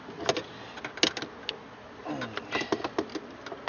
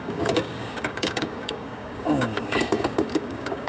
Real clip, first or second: first